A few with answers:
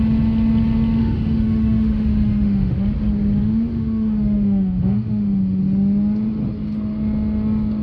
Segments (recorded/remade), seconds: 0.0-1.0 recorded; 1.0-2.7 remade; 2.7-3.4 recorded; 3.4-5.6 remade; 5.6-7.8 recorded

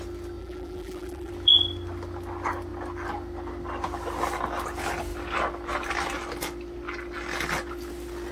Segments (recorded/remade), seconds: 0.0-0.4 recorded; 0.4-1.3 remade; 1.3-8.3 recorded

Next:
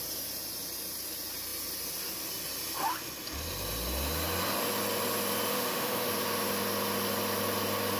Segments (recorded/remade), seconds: 0.0-5.5 recorded; 5.5-6.1 remade; 6.1-8.0 recorded

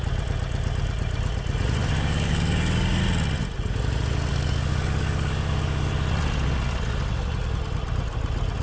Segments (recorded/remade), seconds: 0.0-1.8 recorded; 1.8-3.0 remade; 3.0-4.3 recorded; 4.3-5.9 remade; 5.9-8.6 recorded

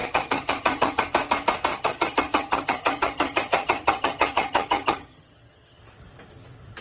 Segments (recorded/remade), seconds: 0.0-1.0 remade; 1.0-1.7 recorded; 1.7-5.8 remade; 5.8-6.8 recorded

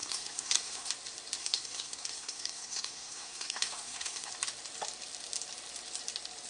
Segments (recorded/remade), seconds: 0.0-0.9 remade; 0.9-1.4 recorded; 1.4-4.3 remade; 4.3-6.5 recorded

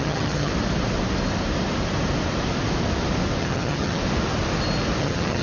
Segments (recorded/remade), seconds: 0.0-0.5 remade; 0.5-3.4 recorded; 3.4-4.0 remade; 4.0-5.0 recorded; 5.0-5.4 remade